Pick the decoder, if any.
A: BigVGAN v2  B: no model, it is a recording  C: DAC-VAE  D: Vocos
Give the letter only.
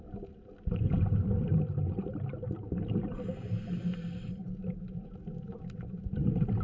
B